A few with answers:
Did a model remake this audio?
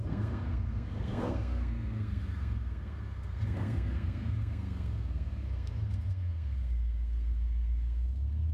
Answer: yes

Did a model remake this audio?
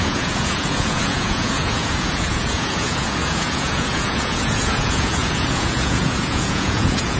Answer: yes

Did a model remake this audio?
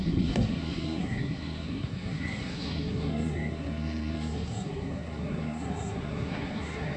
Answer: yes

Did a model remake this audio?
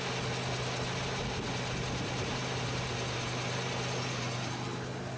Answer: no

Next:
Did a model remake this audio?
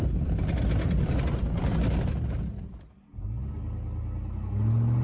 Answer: no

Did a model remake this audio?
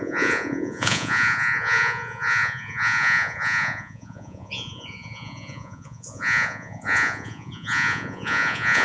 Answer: yes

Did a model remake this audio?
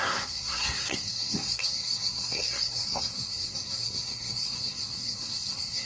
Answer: yes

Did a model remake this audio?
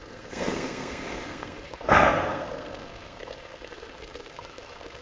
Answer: yes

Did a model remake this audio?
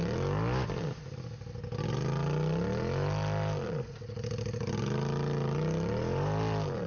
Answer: no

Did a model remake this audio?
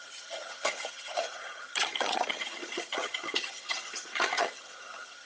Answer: yes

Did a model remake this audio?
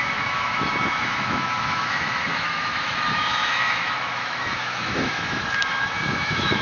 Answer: yes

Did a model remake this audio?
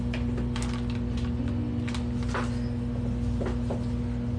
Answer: no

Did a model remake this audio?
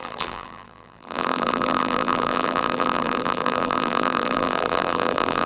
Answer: yes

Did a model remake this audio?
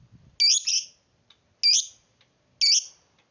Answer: no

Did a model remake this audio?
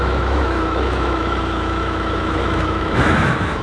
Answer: yes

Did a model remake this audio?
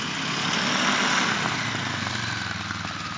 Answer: no